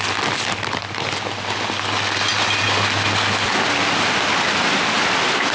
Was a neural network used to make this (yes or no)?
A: no